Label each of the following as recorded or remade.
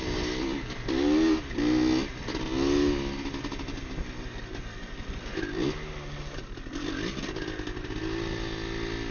recorded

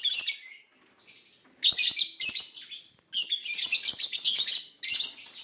recorded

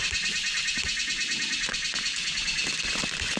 recorded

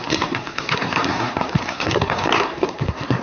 remade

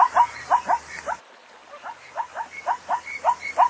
recorded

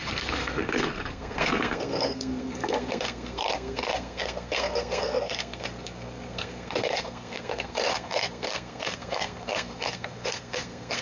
remade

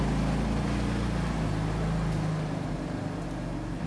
recorded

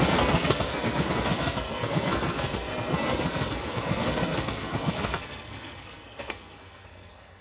remade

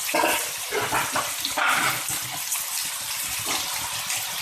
recorded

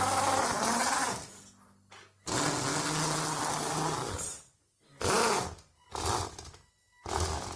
recorded